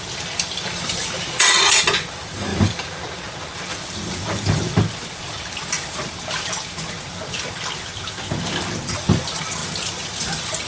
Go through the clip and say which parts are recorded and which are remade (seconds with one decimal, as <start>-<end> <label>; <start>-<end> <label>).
0.0-10.7 recorded